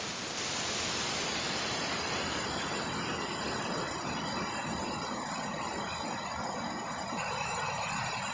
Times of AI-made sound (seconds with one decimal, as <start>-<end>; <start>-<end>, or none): none